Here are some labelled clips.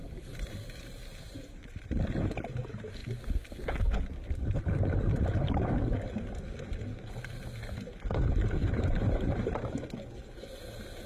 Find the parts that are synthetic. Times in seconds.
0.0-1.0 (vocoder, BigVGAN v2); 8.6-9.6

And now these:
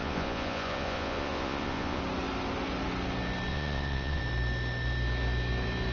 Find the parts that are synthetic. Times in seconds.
0.0-2.0 (vocoder, Vocos); 3.5-4.2

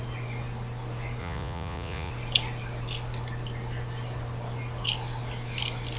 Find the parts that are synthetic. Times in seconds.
1.2-2.1 (vocoder, Vocos)

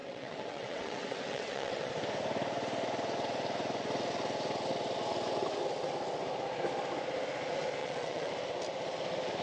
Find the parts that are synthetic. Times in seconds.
0.0-1.9 (vocoder, WaveNeXt); 7.8-8.3

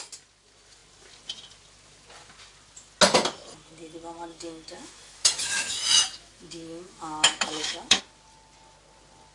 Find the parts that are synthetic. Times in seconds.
4.3-8.0 (autoencoder, DAC-VAE)

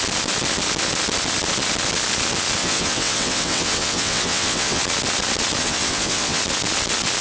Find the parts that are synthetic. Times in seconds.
2.6-4.8 (vocoder, WaveNeXt); 5.6-6.4

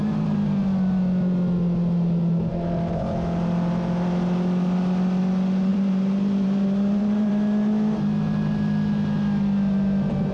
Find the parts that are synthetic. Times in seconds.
5.7-7.3 (vocoder, BigVGAN v2)

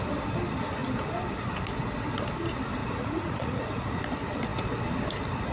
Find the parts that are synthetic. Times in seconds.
2.8-4.0 (vocoder, Vocos)